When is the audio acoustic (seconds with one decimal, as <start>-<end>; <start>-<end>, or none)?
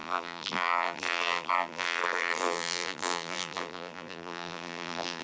none